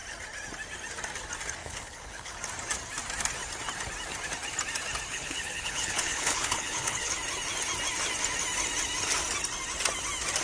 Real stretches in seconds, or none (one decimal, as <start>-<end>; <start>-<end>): 0.0-1.6; 2.3-5.1; 7.1-10.4